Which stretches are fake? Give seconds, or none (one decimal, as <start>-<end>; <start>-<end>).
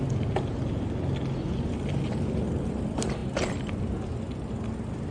none